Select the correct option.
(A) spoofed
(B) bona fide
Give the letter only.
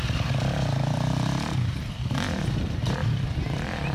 A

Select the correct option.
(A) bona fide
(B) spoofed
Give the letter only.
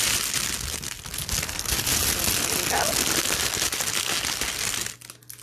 A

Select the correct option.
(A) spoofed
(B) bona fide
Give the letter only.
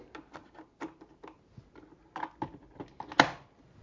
B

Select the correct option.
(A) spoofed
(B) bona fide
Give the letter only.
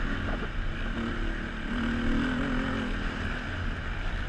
B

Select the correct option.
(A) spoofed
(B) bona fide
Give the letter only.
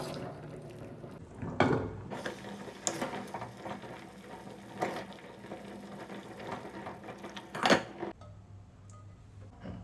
B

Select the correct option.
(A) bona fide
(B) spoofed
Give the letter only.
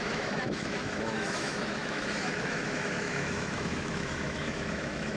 B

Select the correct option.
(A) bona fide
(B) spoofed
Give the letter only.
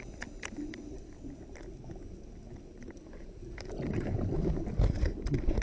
A